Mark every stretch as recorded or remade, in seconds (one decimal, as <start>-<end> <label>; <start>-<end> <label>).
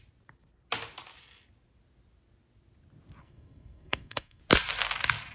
0.0-3.2 recorded; 3.2-4.4 remade; 4.4-5.3 recorded